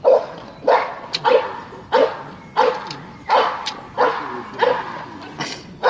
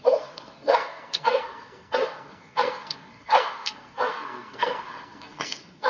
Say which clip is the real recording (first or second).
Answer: first